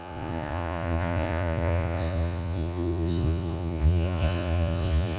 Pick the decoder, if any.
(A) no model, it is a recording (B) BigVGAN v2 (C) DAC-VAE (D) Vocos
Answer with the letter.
D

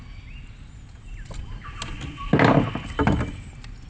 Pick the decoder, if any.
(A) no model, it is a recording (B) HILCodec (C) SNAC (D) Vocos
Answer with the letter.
A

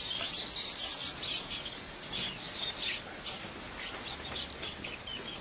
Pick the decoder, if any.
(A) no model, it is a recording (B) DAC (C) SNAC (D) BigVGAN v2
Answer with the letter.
A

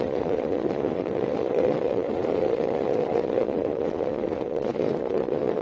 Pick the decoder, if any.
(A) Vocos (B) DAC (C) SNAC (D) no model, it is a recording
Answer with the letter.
A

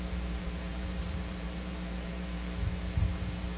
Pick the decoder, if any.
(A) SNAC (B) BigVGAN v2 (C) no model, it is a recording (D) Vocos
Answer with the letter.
B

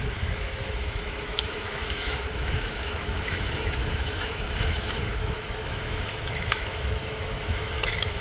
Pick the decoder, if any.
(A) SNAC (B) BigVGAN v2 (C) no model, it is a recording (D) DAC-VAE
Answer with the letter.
D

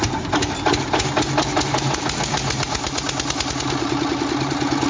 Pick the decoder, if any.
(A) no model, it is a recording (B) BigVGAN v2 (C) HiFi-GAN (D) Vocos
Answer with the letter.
A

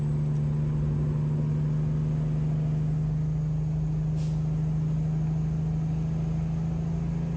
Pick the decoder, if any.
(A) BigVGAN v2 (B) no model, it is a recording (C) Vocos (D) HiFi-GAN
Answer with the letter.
B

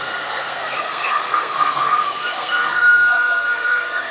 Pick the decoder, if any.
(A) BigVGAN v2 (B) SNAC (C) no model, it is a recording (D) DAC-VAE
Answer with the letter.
B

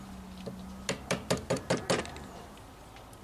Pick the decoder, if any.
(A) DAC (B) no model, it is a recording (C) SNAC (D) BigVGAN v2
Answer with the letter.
B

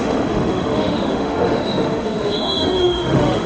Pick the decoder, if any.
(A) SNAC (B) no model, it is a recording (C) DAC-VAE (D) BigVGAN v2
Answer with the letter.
C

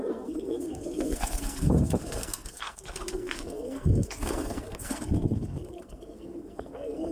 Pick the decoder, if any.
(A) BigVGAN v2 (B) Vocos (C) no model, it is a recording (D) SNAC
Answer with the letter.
D